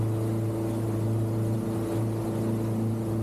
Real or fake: real